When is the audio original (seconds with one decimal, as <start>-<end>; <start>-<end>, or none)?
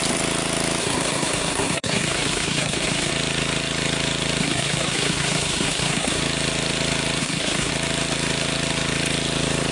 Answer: 0.0-0.8; 3.1-4.4; 6.2-7.2; 7.7-9.7